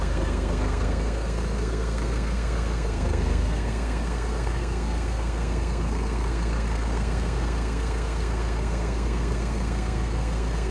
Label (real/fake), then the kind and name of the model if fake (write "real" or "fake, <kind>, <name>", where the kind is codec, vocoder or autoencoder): fake, codec, SNAC